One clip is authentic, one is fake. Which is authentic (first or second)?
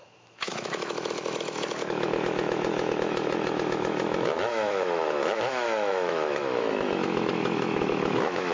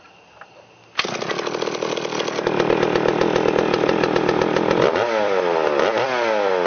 second